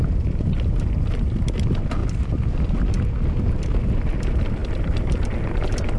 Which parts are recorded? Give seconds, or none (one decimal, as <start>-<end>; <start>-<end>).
0.0-2.0; 2.9-4.6; 5.4-6.0

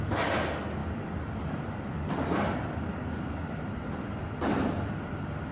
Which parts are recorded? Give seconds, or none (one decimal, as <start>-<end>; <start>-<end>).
0.0-0.8; 4.1-5.5